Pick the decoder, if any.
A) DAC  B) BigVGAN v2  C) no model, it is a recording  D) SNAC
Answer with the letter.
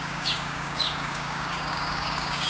A